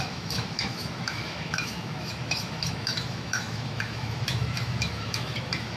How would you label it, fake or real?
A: fake